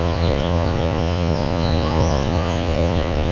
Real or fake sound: fake